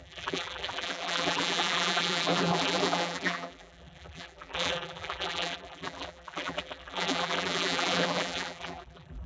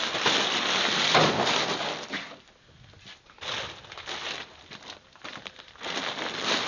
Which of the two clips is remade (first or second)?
first